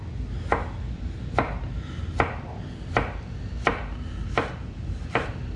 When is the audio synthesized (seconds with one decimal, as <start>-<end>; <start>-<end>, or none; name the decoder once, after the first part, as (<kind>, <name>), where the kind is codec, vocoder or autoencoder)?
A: none